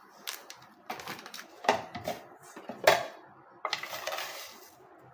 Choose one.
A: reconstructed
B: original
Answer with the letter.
B